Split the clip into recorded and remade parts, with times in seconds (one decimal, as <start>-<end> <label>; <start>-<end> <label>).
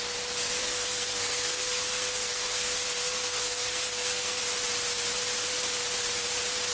0.0-0.4 recorded; 0.4-4.4 remade; 4.4-6.7 recorded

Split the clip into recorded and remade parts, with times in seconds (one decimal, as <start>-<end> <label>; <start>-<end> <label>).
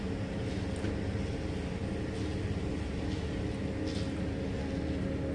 0.0-5.3 recorded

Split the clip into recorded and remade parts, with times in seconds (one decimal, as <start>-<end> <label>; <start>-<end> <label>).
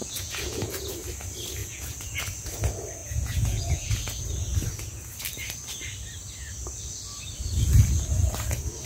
0.0-0.9 remade; 0.9-1.6 recorded; 1.6-2.2 remade; 2.2-3.0 recorded; 3.0-3.9 remade; 3.9-8.9 recorded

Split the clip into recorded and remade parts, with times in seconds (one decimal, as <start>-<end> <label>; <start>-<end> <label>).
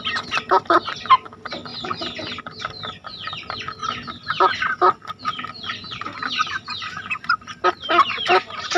0.0-8.8 recorded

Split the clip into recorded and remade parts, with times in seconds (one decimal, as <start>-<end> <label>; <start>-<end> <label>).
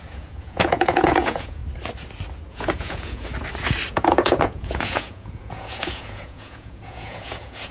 0.0-1.6 remade; 1.6-2.5 recorded; 2.5-3.3 remade; 3.3-3.9 recorded; 3.9-7.7 remade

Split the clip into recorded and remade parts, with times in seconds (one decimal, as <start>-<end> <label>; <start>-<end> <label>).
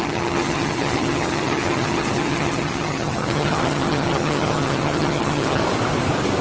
0.0-5.6 remade; 5.6-6.4 recorded